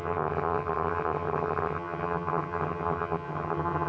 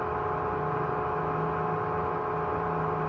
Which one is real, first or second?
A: second